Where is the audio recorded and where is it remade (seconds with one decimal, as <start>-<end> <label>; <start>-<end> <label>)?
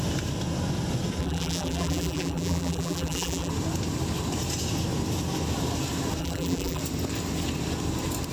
0.0-1.2 recorded; 1.2-3.5 remade; 3.5-6.2 recorded; 6.2-6.8 remade; 6.8-8.3 recorded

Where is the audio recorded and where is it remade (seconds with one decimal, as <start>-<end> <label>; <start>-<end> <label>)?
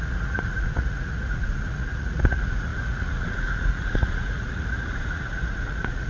0.0-6.1 remade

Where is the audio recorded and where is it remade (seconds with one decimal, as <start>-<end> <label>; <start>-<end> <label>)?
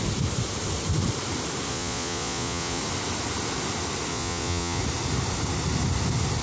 0.0-1.7 recorded; 1.7-2.8 remade; 2.8-4.1 recorded; 4.1-4.8 remade; 4.8-6.4 recorded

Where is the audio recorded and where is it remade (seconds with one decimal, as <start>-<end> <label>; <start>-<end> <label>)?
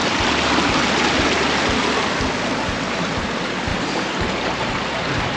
0.0-3.7 recorded; 3.7-4.7 remade; 4.7-5.4 recorded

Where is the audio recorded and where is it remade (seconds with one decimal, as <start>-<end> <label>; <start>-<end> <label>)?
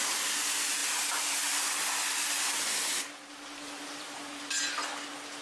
0.0-5.4 recorded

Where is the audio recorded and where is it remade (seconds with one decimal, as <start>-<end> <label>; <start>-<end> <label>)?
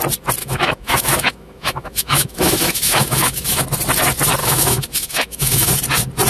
0.0-0.4 recorded; 0.4-3.6 remade; 3.6-4.4 recorded; 4.4-5.7 remade; 5.7-6.3 recorded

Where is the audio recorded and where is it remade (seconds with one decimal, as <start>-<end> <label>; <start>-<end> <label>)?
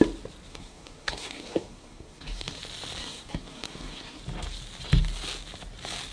0.0-0.5 recorded; 0.5-2.6 remade; 2.6-3.0 recorded; 3.0-4.2 remade; 4.2-6.1 recorded